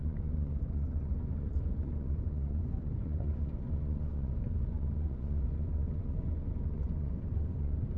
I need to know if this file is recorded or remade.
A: remade